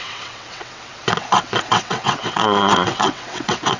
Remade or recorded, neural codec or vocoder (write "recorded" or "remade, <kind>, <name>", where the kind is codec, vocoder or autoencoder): remade, vocoder, WaveNeXt